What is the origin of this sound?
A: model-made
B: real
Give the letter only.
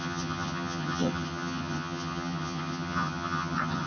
A